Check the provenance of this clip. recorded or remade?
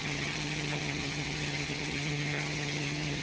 remade